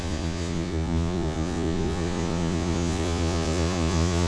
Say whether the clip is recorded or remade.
remade